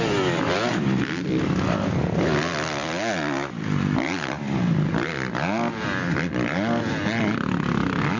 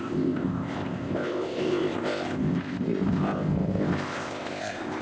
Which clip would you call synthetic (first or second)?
second